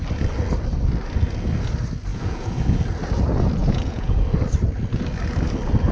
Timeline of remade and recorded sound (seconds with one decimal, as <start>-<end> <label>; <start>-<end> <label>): 0.0-2.1 recorded; 2.1-2.8 remade; 2.8-3.6 recorded; 3.6-4.2 remade; 4.2-5.9 recorded